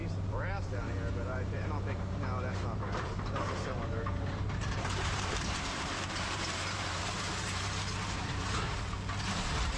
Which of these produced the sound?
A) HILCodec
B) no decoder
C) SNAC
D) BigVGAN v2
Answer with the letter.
D